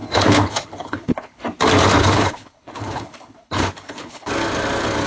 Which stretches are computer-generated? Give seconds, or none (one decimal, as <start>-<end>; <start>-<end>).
0.0-1.4; 2.0-4.3